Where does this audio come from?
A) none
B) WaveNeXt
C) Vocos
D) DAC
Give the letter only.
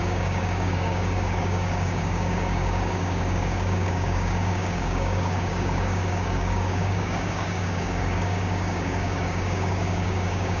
D